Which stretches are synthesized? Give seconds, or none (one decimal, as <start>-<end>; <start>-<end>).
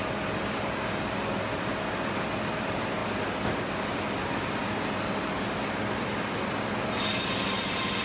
none